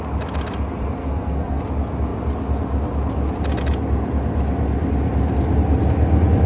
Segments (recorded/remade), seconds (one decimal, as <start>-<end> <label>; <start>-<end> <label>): 0.0-1.0 recorded; 1.0-1.6 remade; 1.6-6.5 recorded